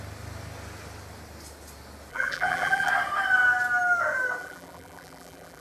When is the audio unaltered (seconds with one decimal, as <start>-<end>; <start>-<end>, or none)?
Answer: 0.0-2.1; 2.9-4.4